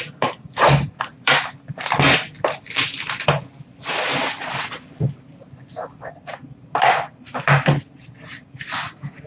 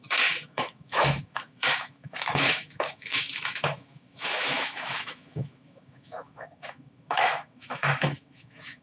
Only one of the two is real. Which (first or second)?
first